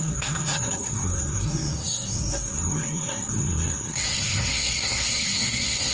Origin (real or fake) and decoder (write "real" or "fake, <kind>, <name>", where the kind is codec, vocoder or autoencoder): fake, codec, SNAC